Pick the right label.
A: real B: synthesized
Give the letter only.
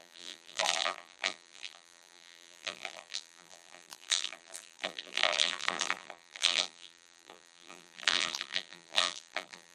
B